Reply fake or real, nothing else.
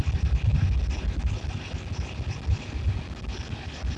real